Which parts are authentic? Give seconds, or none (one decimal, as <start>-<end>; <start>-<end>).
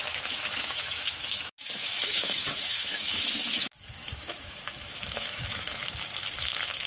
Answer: none